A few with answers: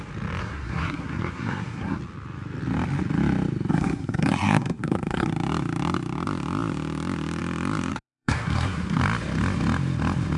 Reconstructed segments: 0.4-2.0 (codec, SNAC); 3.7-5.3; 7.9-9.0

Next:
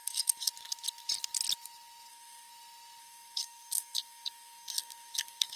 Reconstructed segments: 0.0-0.5 (codec, SNAC); 2.1-2.5; 3.0-5.6